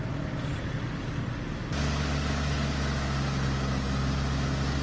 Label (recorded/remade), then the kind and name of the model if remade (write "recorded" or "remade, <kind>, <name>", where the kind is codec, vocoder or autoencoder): recorded